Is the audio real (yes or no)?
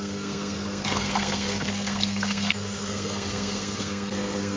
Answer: no